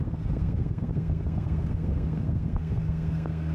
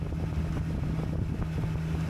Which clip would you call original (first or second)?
second